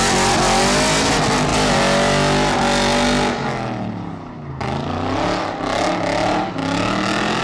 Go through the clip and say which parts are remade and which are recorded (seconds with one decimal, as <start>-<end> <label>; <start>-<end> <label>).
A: 0.0-7.4 recorded